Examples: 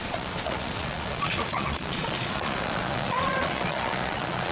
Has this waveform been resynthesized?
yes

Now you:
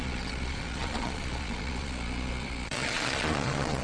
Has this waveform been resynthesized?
yes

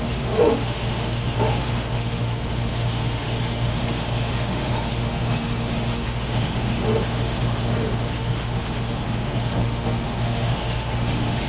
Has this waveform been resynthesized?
yes